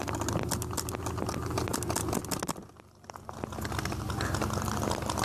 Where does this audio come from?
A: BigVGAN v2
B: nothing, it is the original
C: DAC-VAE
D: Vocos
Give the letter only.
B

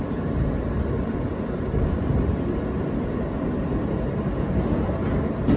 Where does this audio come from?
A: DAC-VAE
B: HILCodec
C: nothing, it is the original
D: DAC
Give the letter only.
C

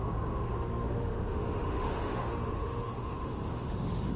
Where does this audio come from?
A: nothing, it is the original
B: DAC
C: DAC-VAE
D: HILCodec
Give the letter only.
C